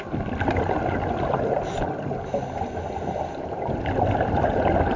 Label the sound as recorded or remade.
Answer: recorded